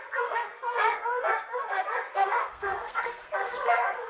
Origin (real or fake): fake